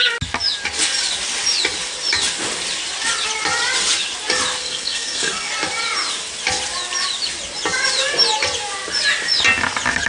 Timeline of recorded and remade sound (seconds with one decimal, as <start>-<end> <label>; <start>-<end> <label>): 0.0-4.6 recorded; 4.6-5.5 remade; 5.5-10.1 recorded